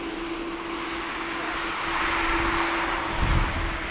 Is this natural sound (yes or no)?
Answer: yes